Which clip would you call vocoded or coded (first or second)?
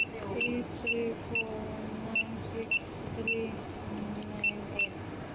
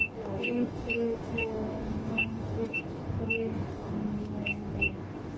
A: second